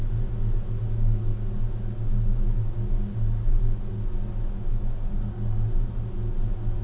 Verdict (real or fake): real